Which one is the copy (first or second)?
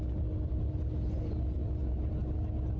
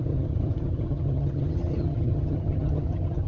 second